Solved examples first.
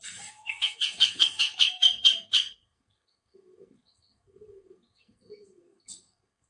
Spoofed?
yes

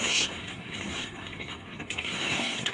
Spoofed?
yes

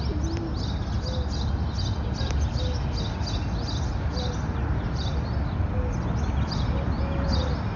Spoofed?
no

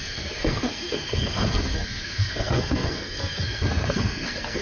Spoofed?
yes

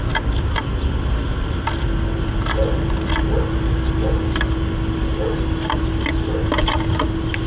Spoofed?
no